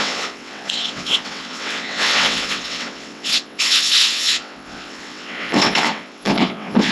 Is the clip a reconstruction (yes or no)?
yes